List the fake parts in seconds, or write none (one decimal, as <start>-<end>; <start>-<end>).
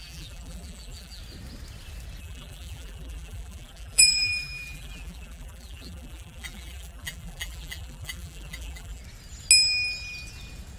0.0-1.2; 2.2-9.0